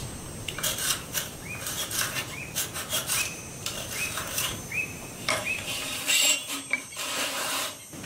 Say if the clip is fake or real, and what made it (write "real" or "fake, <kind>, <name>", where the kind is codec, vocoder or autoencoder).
fake, vocoder, BigVGAN v2